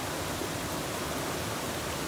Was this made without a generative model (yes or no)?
yes